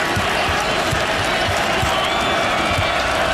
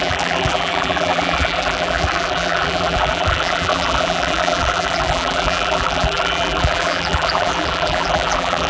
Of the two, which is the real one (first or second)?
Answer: first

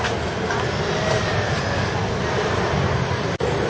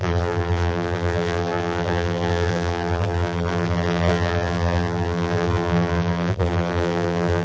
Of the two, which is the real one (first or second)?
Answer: first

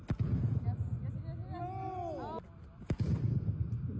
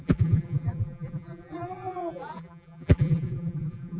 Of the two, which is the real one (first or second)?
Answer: first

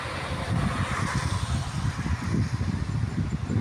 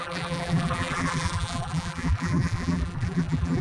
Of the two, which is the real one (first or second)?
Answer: first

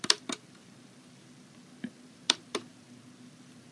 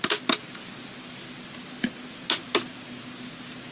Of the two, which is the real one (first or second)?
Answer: second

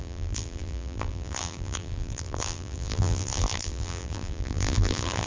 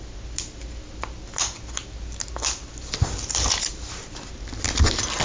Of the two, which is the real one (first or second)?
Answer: second